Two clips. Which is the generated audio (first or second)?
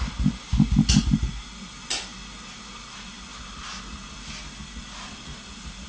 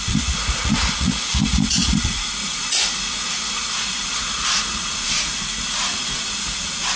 second